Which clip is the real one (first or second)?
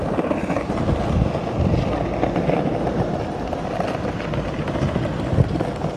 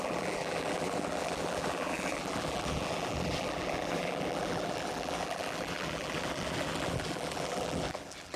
first